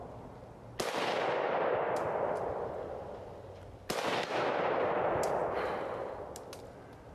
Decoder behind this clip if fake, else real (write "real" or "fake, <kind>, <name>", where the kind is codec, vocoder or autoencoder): real